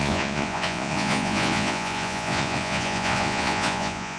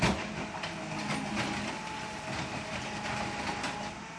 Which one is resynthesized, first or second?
first